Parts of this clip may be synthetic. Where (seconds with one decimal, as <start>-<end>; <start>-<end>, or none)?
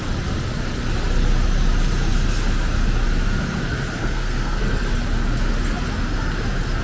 4.0-4.6